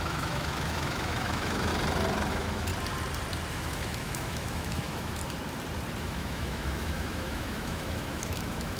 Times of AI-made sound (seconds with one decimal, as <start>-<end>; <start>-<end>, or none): 0.0-1.7; 2.3-2.7; 3.5-5.2; 6.0-8.8